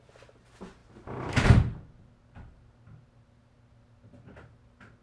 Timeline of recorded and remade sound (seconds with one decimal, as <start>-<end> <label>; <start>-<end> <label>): 0.0-5.0 recorded